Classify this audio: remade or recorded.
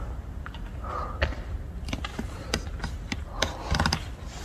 remade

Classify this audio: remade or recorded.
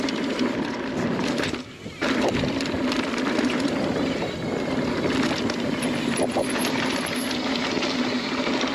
recorded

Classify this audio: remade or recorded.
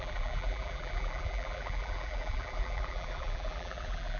remade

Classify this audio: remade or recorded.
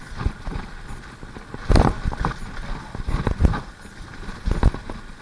recorded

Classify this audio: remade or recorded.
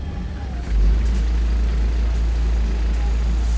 recorded